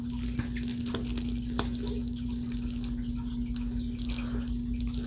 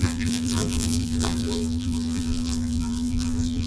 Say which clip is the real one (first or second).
first